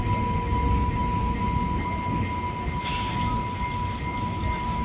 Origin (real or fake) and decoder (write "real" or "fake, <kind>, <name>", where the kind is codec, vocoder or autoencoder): real